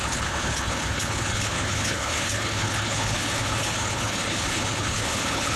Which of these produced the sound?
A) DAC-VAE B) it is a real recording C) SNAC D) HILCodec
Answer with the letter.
D